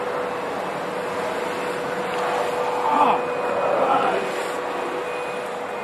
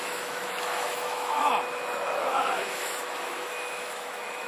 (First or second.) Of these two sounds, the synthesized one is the second